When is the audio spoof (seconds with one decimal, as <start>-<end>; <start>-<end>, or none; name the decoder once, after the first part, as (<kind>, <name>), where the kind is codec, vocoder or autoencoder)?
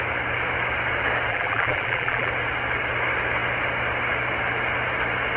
1.3-2.3 (vocoder, BigVGAN v2)